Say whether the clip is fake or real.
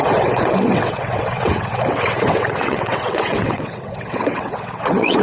fake